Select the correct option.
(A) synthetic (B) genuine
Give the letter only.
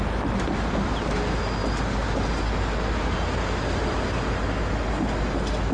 B